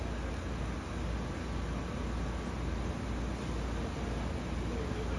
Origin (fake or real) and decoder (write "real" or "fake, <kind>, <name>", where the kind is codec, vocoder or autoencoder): real